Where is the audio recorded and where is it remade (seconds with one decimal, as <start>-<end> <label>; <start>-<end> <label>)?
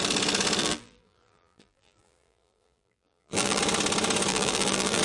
0.0-0.6 recorded; 0.6-3.6 remade; 3.6-4.3 recorded; 4.3-5.0 remade